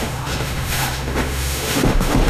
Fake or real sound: fake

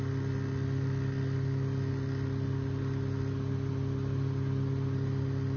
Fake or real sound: real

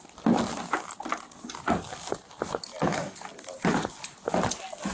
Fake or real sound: real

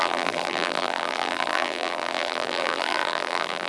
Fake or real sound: fake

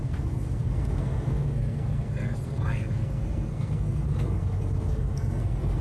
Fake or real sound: fake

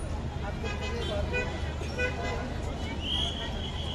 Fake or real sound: real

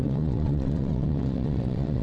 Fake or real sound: fake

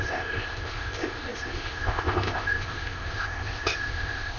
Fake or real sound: fake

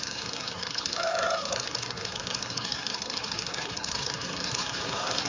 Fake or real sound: fake